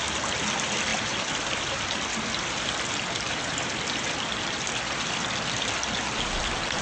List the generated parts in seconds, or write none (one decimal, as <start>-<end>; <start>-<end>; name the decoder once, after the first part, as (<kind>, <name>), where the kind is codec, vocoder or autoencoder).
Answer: none